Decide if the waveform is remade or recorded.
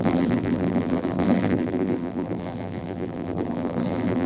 remade